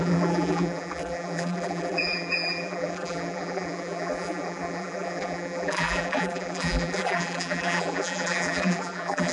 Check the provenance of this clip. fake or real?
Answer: fake